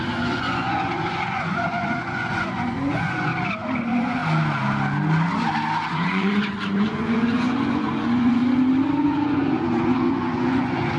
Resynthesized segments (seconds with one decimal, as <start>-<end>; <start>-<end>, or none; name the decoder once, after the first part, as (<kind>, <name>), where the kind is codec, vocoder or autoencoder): 0.0-3.3 (vocoder, Vocos); 3.8-4.2; 5.9-8.4; 9.0-11.0